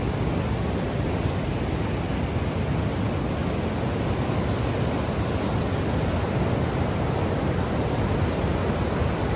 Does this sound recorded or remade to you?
recorded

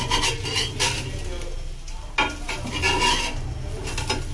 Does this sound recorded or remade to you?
recorded